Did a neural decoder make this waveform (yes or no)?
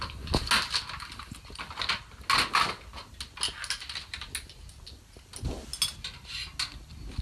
no